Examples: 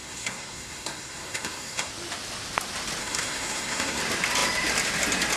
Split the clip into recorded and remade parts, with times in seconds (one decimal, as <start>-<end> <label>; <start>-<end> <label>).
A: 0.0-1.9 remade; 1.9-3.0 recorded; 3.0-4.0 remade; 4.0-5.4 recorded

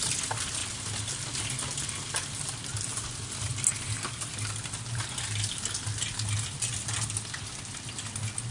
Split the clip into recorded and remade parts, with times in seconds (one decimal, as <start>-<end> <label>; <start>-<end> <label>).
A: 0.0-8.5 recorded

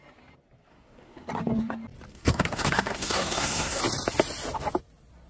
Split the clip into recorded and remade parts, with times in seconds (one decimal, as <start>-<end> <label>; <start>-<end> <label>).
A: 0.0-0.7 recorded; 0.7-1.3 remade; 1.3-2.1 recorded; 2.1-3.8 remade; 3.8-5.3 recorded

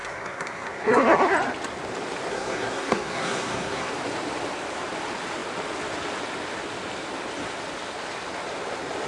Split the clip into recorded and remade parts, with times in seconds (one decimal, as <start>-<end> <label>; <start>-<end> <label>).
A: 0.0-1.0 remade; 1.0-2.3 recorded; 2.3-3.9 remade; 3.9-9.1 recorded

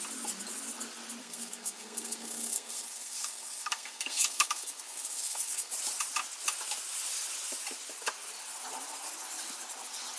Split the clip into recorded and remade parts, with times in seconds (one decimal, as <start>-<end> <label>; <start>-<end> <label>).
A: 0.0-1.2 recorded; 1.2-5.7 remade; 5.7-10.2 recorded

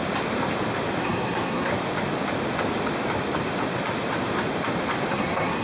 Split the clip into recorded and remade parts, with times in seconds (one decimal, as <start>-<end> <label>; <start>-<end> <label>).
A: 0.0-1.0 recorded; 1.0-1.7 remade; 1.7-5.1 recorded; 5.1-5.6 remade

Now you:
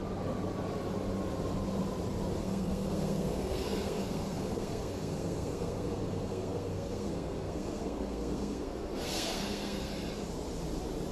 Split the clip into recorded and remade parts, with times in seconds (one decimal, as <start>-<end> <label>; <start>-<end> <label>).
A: 0.0-2.4 recorded; 2.4-9.9 remade; 9.9-11.1 recorded